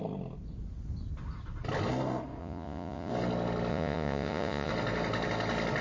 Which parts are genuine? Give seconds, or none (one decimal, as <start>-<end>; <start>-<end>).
0.0-2.4; 3.1-3.7; 4.7-5.8